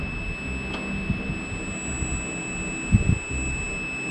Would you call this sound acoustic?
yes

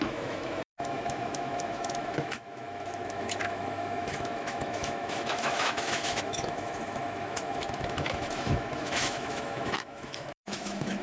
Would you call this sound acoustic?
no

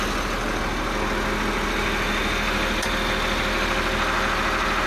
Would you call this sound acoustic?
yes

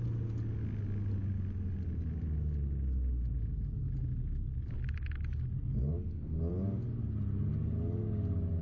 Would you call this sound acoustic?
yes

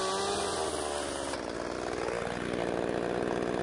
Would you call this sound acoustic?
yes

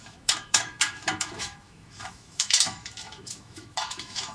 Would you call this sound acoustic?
no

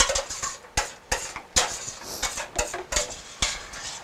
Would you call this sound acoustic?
yes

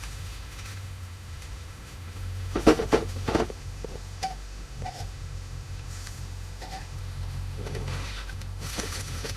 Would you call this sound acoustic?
no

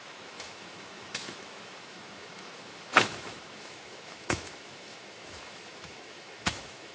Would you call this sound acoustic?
no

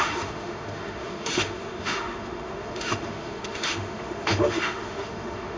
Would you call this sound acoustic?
no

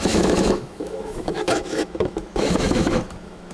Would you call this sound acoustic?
no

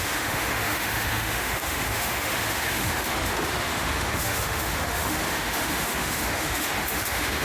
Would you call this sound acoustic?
no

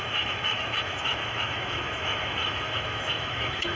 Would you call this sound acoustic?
no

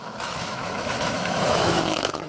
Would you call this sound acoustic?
no